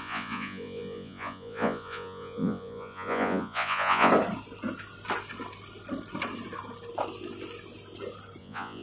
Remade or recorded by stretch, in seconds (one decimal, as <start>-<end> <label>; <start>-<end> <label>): 0.0-4.1 remade; 4.1-8.4 recorded; 8.4-8.8 remade